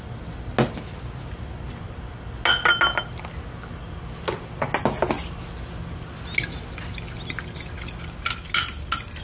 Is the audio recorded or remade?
recorded